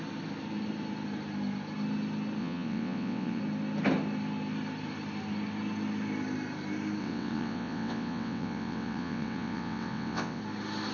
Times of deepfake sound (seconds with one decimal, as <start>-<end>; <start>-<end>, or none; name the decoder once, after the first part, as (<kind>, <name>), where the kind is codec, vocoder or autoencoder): 2.4-3.4 (vocoder, WaveNeXt); 7.0-10.4